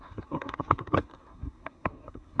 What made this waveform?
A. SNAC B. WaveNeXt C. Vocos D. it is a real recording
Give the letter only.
A